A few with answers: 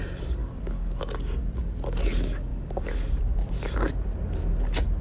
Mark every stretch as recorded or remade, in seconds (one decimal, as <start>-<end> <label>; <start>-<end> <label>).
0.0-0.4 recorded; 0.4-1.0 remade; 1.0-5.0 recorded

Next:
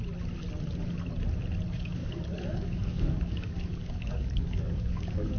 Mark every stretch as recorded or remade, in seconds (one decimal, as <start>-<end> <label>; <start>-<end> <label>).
0.0-2.0 recorded; 2.0-5.4 remade

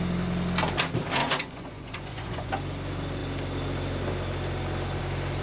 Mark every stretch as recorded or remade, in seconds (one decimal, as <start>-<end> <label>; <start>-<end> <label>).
0.0-1.2 recorded; 1.2-2.5 remade; 2.5-5.4 recorded

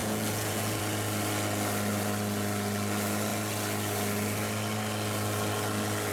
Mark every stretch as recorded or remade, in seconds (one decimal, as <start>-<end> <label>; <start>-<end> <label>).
0.0-0.8 remade; 0.8-6.1 recorded